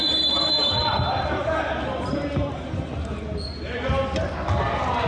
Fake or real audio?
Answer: real